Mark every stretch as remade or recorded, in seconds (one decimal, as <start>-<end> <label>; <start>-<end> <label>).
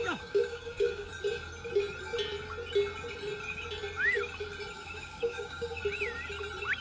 0.0-1.1 remade; 1.1-4.7 recorded; 4.7-5.8 remade; 5.8-6.8 recorded